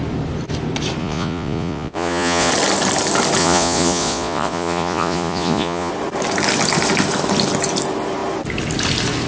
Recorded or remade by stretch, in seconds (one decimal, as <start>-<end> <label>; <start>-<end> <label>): 0.0-1.0 recorded; 1.0-2.5 remade; 2.5-3.4 recorded; 3.4-5.9 remade; 5.9-9.3 recorded